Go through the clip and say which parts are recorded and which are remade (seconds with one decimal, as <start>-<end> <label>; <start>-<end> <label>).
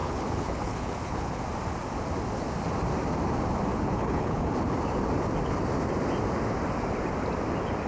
0.0-1.4 remade; 1.4-3.7 recorded; 3.7-4.5 remade; 4.5-7.9 recorded